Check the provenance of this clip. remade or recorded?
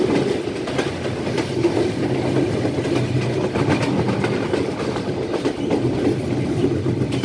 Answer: recorded